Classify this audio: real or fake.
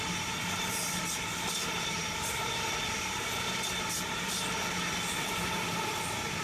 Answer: real